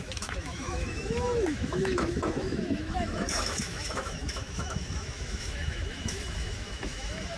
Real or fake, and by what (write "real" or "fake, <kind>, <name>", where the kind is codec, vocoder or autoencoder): fake, autoencoder, DAC-VAE